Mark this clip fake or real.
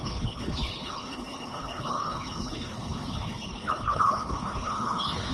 fake